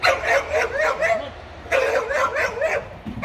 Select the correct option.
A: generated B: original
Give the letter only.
B